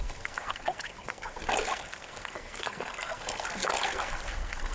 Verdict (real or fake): fake